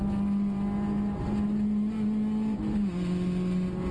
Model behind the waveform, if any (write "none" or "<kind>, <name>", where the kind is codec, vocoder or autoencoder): none